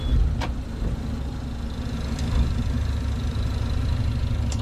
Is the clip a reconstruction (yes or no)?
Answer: no